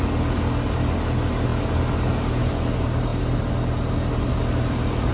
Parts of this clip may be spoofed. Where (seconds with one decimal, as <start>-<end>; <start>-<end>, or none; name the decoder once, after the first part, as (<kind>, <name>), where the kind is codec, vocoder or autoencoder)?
none